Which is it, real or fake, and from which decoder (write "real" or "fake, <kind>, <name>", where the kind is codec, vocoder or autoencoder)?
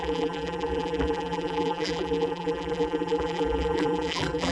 fake, vocoder, BigVGAN v2